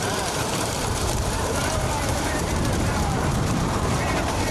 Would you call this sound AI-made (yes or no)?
yes